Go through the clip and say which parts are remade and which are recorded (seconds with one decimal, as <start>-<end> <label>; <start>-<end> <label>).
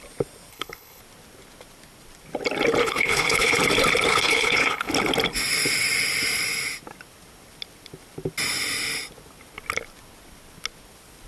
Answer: 0.0-0.5 recorded; 0.5-1.0 remade; 1.0-2.8 recorded; 2.8-3.6 remade; 3.6-4.1 recorded; 4.1-4.9 remade; 4.9-11.3 recorded